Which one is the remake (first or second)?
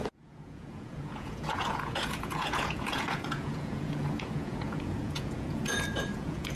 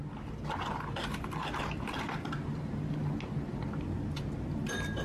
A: first